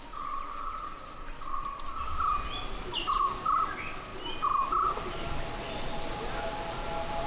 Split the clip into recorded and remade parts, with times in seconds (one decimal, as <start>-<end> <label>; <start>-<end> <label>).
0.0-2.9 recorded; 2.9-3.6 remade; 3.6-7.3 recorded